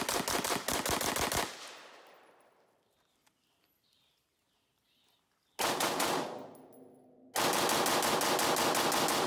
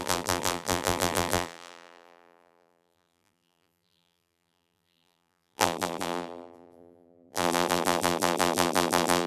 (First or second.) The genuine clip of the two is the first